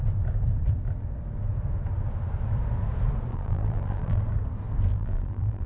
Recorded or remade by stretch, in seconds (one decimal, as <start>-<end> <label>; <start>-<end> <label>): 0.0-3.3 recorded; 3.3-4.2 remade; 4.2-4.9 recorded; 4.9-5.7 remade